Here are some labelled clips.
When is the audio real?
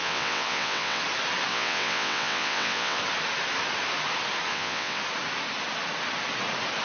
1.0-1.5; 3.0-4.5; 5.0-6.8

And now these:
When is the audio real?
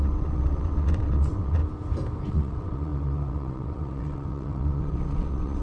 1.6-2.3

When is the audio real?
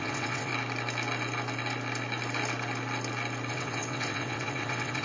0.5-3.5